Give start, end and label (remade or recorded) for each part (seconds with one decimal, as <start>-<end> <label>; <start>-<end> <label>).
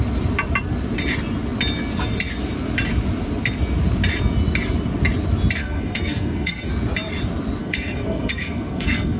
0.0-5.6 recorded; 5.6-6.7 remade; 6.7-7.6 recorded; 7.6-9.2 remade